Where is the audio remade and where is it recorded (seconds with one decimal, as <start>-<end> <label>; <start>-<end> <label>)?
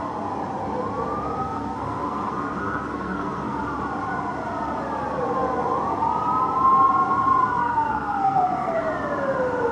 0.0-1.4 recorded; 1.4-3.6 remade; 3.6-7.6 recorded; 7.6-8.9 remade; 8.9-9.7 recorded